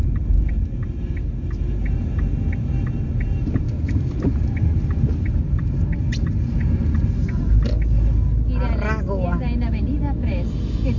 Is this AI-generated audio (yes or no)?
no